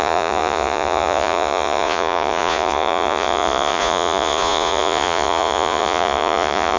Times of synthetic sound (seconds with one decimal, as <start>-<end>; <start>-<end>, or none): 0.0-6.8